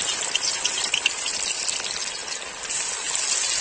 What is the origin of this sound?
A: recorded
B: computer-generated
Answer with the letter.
A